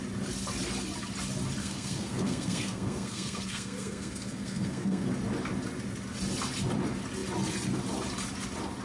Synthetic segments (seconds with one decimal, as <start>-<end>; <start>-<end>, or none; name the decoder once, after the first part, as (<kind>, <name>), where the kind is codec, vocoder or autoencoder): 1.6-5.1 (codec, SNAC)